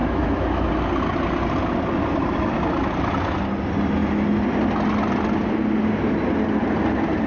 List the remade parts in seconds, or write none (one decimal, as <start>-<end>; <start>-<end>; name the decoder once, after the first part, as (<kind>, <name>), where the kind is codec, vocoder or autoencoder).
0.0-0.7 (autoencoder, DAC-VAE)